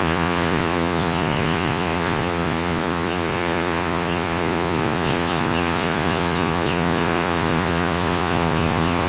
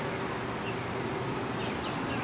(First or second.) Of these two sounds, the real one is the second